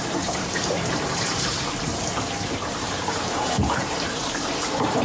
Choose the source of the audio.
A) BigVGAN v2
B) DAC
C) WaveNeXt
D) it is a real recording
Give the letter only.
A